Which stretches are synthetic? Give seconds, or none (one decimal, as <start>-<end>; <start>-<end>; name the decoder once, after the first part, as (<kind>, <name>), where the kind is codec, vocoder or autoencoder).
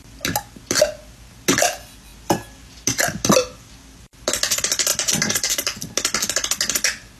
none